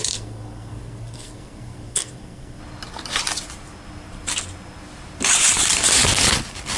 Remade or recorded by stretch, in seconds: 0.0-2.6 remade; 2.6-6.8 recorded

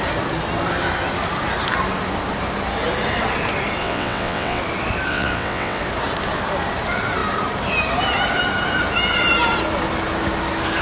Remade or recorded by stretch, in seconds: 0.0-3.8 recorded; 3.8-4.6 remade; 4.6-5.1 recorded; 5.1-5.8 remade; 5.8-10.8 recorded

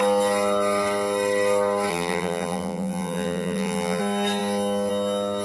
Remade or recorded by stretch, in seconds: 0.0-1.9 recorded; 1.9-4.0 remade; 4.0-5.4 recorded

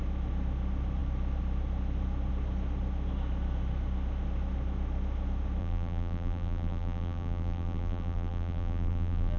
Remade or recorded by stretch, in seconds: 0.0-5.6 recorded; 5.6-9.4 remade